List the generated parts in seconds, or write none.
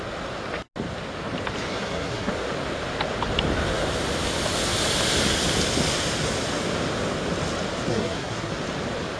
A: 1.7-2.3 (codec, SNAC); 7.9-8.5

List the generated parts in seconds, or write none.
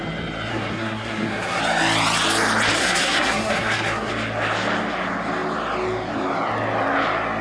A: 0.5-1.6 (codec, SNAC); 2.8-4.1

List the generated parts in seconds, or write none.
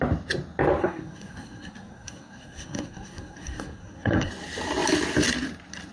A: 0.8-4.3 (codec, SNAC)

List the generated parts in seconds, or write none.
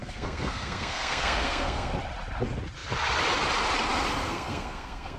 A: 0.0-1.9 (codec, SNAC); 4.2-5.2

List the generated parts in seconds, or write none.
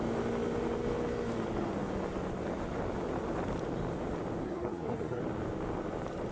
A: 4.4-5.2 (codec, SNAC)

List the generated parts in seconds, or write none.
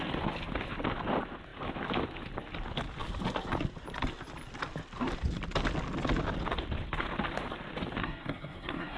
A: 8.0-9.0 (codec, SNAC)